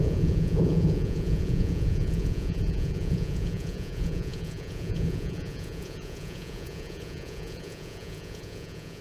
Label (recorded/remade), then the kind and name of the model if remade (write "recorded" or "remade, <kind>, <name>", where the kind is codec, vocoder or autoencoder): remade, vocoder, Vocos